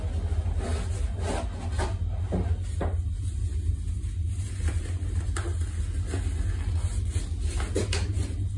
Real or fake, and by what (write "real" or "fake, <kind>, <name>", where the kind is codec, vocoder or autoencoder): real